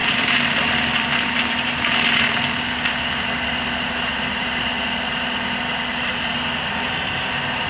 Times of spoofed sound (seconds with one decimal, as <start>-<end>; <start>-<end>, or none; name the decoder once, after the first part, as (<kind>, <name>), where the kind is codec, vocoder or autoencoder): none